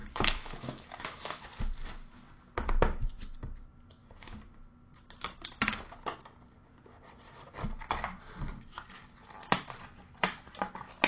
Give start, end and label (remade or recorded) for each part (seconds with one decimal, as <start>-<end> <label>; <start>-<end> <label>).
0.0-1.4 remade; 1.4-11.1 recorded